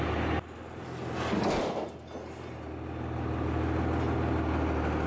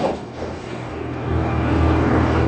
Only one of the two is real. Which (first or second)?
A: first